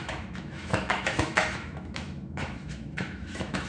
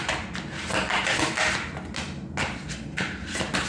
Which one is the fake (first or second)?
first